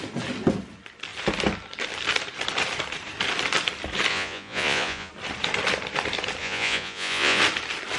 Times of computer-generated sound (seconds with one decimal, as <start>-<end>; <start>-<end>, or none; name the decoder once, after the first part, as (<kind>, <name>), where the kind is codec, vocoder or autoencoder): 4.1-5.1 (vocoder, Vocos); 6.4-7.4